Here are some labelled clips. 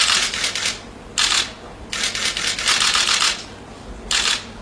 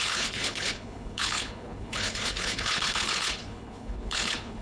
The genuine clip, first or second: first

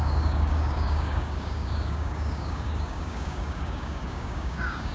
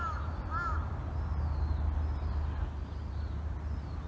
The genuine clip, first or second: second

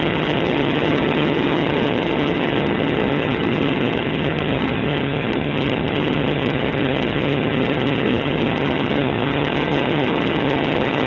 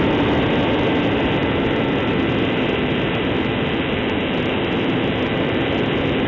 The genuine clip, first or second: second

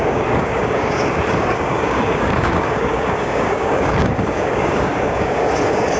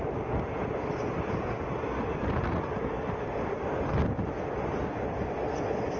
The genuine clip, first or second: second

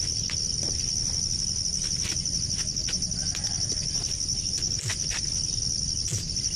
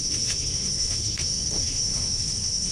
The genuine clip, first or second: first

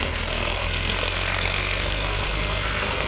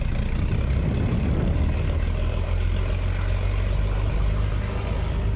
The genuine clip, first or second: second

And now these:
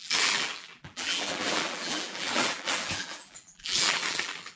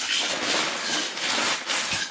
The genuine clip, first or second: second